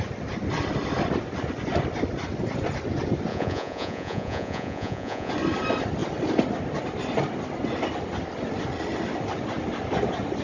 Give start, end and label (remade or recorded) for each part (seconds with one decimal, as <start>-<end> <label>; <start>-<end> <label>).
0.0-3.3 recorded; 3.3-5.3 remade; 5.3-10.4 recorded